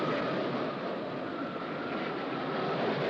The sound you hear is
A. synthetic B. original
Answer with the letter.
B